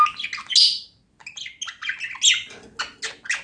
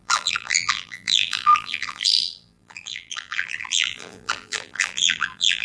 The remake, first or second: second